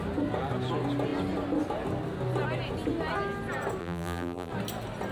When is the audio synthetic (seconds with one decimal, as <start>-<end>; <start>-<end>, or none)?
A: 3.8-4.5

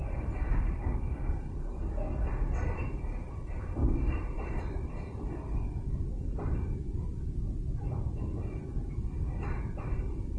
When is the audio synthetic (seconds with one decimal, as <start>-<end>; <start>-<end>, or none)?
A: 3.8-4.6; 6.1-7.0

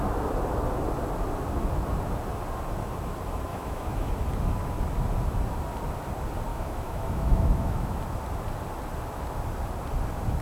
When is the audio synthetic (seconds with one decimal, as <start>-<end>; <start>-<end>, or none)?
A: 3.5-4.1; 6.5-8.0

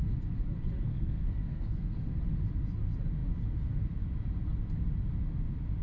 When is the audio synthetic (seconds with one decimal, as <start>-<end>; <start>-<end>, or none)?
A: 0.9-2.2

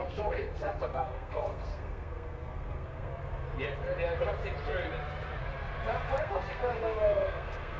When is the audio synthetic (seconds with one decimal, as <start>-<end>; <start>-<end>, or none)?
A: 0.0-3.1; 6.2-7.8

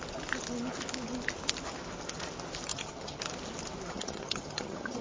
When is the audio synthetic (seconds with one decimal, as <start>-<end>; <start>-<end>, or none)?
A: 2.7-3.2; 3.9-5.0